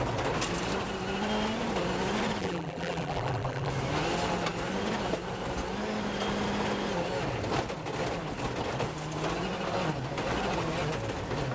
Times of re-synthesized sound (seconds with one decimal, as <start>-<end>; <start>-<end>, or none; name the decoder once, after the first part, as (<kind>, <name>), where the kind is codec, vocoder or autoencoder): 2.4-3.7 (vocoder, BigVGAN v2)